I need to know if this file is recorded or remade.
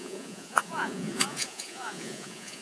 remade